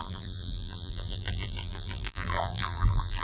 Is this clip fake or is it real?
fake